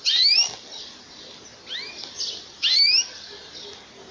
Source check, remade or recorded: recorded